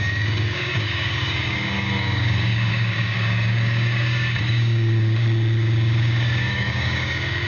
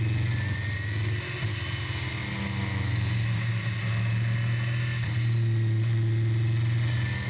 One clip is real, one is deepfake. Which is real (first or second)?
second